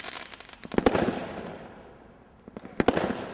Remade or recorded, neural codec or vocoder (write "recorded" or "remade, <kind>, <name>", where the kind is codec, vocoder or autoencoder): recorded